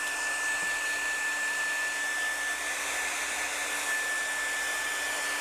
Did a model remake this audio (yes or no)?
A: no